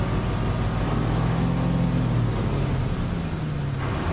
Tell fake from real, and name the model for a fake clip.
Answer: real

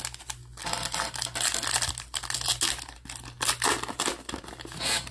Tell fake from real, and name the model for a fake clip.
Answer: real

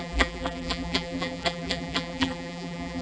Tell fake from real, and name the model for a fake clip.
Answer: fake, vocoder, BigVGAN v2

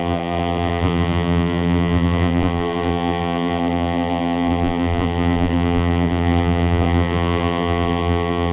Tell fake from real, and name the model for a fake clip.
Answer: fake, vocoder, BigVGAN v2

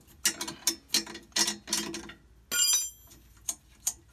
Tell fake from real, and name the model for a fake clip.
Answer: real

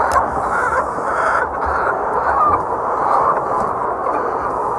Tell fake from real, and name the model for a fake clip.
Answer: fake, vocoder, BigVGAN v2